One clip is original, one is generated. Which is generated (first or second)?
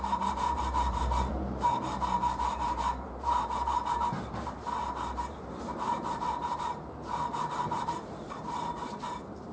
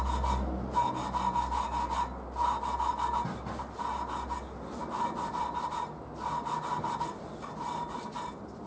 first